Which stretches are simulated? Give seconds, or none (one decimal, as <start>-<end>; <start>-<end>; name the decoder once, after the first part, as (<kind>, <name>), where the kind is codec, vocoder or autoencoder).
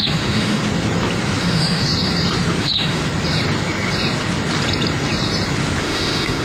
0.0-0.6 (autoencoder, DAC-VAE); 1.4-1.9; 2.6-3.0; 5.8-6.4